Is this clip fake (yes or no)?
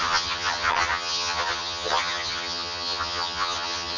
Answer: yes